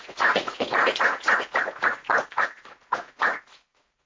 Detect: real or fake fake